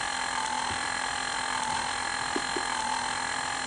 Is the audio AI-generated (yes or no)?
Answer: no